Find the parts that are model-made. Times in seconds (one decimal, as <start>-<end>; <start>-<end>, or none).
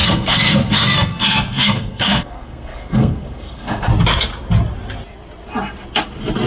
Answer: 0.0-3.9